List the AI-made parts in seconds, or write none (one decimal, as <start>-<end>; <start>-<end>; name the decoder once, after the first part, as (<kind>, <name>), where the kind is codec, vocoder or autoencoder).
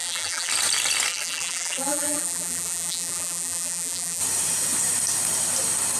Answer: 0.0-0.5 (vocoder, BigVGAN v2); 1.1-4.2